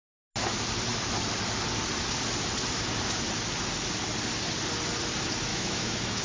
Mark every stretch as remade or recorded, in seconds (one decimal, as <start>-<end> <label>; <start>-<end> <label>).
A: 0.0-5.5 recorded; 5.5-6.2 remade